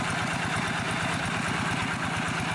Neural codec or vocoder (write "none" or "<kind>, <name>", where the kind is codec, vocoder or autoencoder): none